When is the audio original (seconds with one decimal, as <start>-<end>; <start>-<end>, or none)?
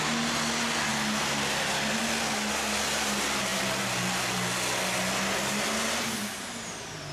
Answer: 0.0-7.1